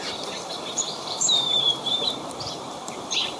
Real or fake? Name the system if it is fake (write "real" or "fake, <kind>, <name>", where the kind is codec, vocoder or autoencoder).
fake, vocoder, BigVGAN v2